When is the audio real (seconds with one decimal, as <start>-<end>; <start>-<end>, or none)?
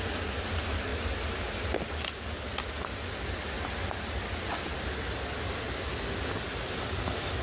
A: 0.0-7.4